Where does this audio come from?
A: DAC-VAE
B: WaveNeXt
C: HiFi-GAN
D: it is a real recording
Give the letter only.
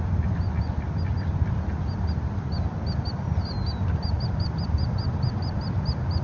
D